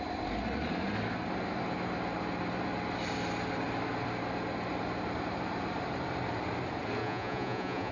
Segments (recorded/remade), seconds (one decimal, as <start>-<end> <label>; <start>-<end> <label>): 0.0-7.0 recorded; 7.0-7.9 remade